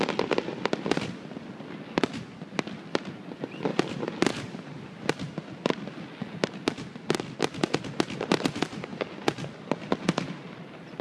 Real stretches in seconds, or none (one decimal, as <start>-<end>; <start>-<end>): 0.0-11.0